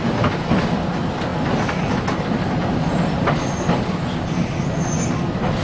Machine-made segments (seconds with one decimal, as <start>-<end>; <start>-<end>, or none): none